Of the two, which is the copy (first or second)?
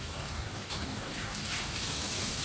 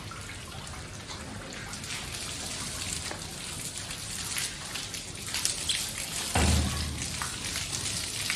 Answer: first